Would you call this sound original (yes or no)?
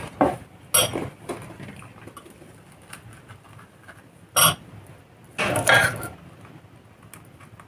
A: yes